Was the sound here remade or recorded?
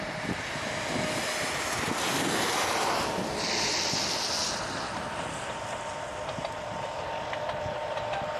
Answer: recorded